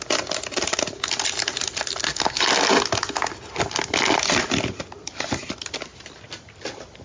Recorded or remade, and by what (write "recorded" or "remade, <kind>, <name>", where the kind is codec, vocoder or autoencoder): recorded